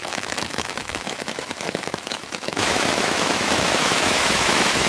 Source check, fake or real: fake